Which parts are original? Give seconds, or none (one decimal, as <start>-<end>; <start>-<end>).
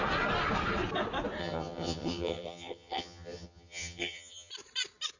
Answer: 0.0-1.4; 4.5-5.2